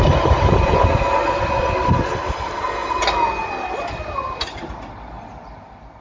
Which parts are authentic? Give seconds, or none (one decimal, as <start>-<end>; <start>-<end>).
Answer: 0.0-6.0

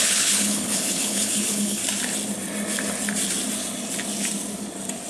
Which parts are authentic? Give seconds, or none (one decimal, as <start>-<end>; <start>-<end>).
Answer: 1.8-5.1

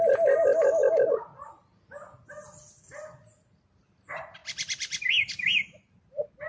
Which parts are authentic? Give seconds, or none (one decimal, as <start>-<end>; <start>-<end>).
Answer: 0.0-6.5

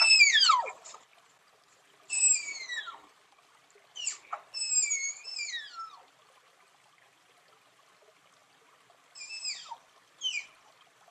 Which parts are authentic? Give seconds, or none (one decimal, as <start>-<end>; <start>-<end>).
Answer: 0.0-2.7; 3.2-11.1

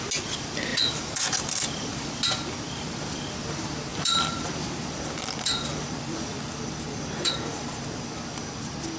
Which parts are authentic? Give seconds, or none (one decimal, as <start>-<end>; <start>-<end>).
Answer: 0.0-0.7; 2.1-3.9; 8.6-9.0

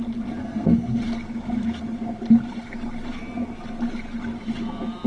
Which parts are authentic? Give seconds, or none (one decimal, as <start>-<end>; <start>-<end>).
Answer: 0.0-0.4; 1.0-5.1

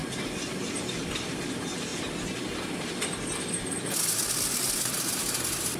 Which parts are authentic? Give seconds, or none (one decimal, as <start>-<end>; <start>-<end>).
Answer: 0.0-5.8

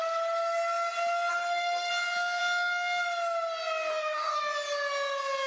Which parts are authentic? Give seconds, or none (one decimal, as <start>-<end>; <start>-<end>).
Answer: 0.0-1.3; 1.9-3.9; 4.4-5.5